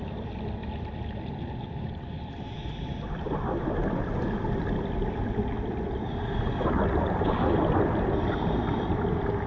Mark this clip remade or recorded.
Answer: recorded